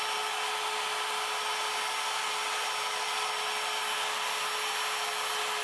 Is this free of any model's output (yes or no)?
yes